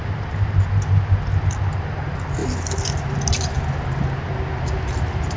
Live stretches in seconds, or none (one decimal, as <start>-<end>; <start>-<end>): 0.0-5.4